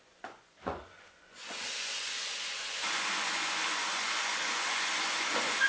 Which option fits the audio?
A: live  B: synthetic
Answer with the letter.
B